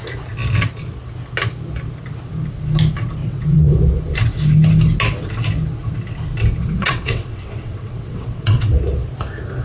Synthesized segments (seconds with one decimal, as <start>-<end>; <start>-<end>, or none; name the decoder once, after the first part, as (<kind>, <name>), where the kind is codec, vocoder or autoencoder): 3.2-3.7 (vocoder, WaveNeXt); 6.6-8.8

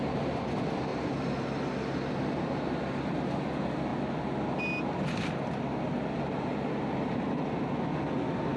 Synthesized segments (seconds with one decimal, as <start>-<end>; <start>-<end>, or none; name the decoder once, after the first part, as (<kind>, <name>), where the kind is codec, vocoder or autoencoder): none

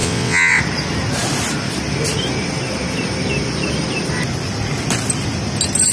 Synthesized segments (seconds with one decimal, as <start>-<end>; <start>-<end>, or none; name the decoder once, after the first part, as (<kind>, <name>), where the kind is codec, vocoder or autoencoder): 0.0-0.6 (vocoder, WaveNeXt)

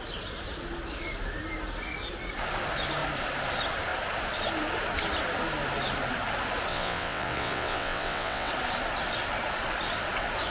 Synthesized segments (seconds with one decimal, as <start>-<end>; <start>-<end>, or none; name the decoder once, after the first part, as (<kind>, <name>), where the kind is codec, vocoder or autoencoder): 6.7-8.5 (vocoder, WaveNeXt)